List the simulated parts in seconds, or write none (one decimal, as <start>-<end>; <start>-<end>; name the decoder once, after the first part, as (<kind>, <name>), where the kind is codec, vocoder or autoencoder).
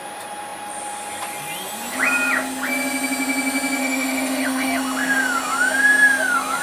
3.8-4.8 (autoencoder, DAC-VAE)